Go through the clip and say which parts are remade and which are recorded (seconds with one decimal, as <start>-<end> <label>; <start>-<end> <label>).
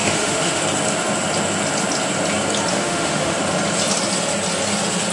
0.0-0.6 remade; 0.6-2.7 recorded; 2.7-3.4 remade; 3.4-5.1 recorded